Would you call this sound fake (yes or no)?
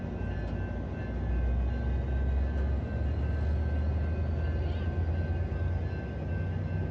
no